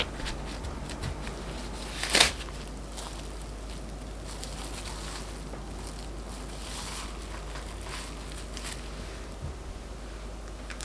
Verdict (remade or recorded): recorded